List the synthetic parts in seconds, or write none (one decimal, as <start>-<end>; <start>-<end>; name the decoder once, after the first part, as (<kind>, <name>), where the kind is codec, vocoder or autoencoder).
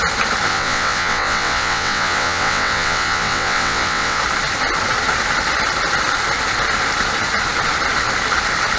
0.5-4.2 (vocoder, WaveNeXt)